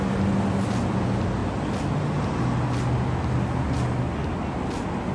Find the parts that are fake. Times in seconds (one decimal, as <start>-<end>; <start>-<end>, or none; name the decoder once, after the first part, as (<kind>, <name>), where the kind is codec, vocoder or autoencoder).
none